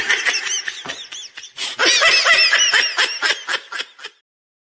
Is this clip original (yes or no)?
yes